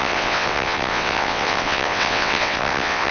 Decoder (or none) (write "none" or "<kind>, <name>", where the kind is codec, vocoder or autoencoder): vocoder, WaveNeXt